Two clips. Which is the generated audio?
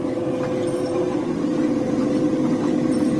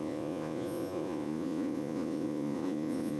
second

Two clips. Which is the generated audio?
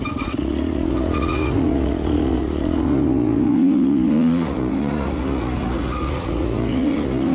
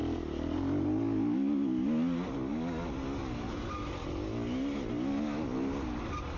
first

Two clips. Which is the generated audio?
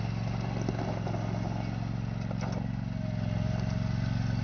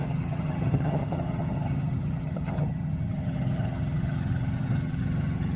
second